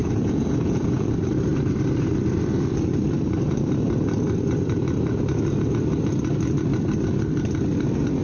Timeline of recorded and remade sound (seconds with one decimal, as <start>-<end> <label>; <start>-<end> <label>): 0.0-1.1 remade; 1.1-8.2 recorded